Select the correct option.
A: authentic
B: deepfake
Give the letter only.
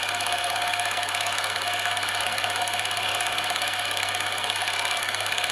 B